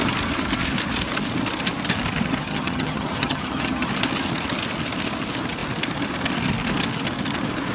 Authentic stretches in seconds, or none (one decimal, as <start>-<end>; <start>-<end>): 0.0-2.4; 3.9-7.7